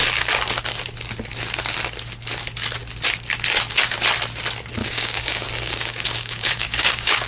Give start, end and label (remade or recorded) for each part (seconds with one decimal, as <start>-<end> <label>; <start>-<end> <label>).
0.0-4.8 recorded; 4.8-7.3 remade